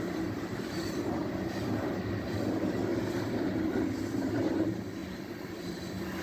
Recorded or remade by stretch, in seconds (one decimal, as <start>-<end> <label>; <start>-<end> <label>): 0.0-1.2 remade; 1.2-2.0 recorded; 2.0-2.9 remade; 2.9-3.6 recorded; 3.6-6.2 remade